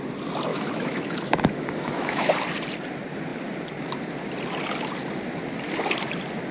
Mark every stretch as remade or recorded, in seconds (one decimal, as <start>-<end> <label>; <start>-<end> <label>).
0.0-0.5 recorded; 0.5-2.3 remade; 2.3-6.5 recorded